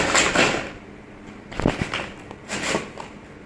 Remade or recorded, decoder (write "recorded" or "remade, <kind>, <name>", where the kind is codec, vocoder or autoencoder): recorded